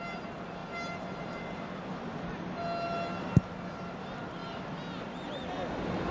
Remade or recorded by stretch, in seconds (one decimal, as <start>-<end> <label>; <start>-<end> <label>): 0.0-6.1 recorded